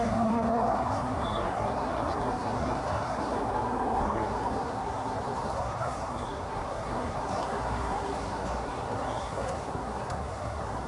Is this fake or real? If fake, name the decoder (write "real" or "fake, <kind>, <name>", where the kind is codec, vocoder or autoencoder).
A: fake, codec, SNAC